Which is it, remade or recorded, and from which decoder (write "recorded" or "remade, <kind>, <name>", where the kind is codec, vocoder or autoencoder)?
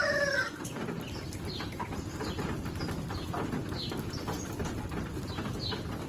recorded